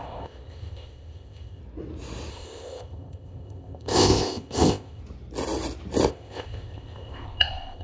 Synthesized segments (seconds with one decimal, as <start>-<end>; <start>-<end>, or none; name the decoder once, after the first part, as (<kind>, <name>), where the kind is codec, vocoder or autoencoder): 0.0-1.6 (codec, ZipCodec); 2.3-5.0; 6.1-7.8